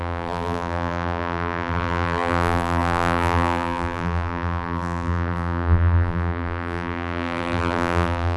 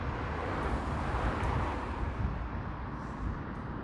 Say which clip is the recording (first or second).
second